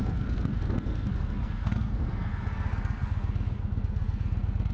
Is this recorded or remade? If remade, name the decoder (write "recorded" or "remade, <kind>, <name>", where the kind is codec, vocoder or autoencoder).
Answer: remade, codec, SNAC